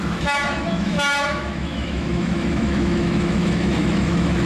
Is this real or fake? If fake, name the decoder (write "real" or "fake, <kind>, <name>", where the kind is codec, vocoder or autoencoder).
fake, autoencoder, DAC-VAE